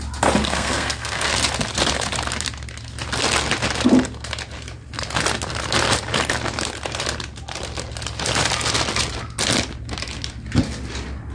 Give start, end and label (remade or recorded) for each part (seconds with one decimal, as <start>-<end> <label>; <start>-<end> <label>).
0.0-0.4 recorded; 0.4-1.3 remade; 1.3-11.3 recorded